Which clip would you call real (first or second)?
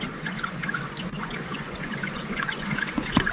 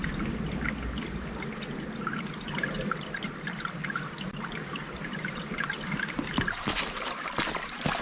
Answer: second